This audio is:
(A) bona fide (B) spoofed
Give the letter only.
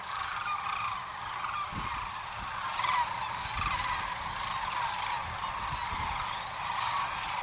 A